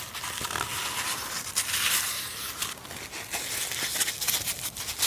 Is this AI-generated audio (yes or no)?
no